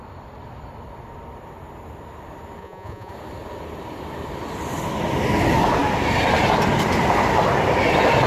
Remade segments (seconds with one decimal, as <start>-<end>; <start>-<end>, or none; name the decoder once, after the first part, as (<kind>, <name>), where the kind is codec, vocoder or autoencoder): 2.6-3.1 (vocoder, Vocos)